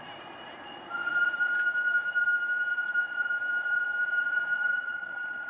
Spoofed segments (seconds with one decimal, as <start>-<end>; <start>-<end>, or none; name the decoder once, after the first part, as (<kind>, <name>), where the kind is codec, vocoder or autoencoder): 4.7-5.5 (vocoder, HiFi-GAN)